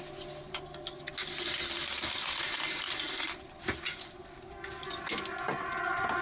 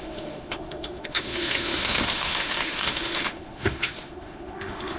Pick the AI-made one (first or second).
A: second